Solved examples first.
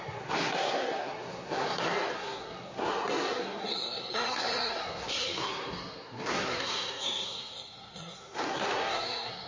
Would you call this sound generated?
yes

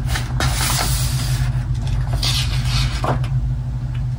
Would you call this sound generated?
no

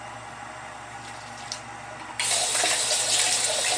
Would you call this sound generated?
no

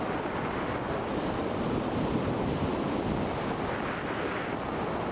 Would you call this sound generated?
no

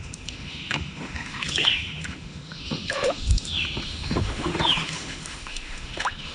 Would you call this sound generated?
yes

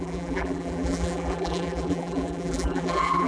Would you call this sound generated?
yes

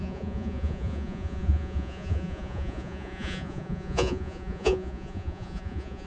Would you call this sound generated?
yes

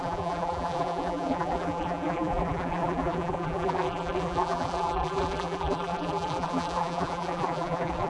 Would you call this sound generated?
yes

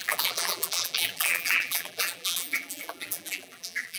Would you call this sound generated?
yes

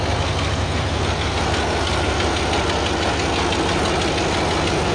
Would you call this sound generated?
no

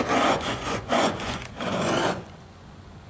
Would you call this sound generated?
yes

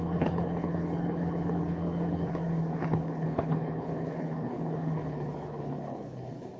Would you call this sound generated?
yes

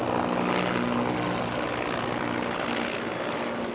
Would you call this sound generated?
no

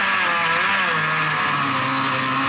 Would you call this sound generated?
no